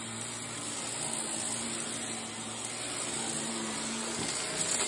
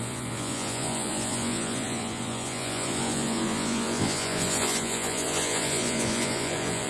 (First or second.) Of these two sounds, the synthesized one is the second